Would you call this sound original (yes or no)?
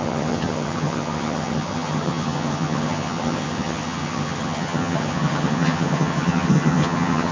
no